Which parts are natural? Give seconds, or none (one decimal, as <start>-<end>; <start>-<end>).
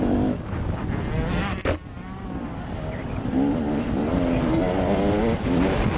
0.0-6.0